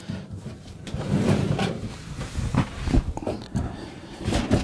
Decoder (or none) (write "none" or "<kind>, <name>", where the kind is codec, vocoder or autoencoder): vocoder, BigVGAN v2